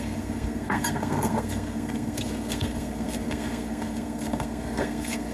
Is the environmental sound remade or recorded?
remade